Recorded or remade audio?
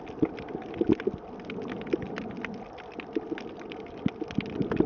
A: recorded